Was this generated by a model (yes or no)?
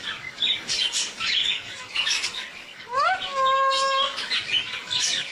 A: yes